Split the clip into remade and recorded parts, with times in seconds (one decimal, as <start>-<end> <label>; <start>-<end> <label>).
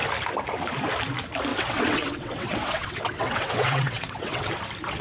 0.0-1.5 recorded; 1.5-4.5 remade; 4.5-5.0 recorded